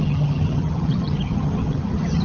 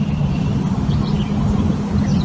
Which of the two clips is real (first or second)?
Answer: second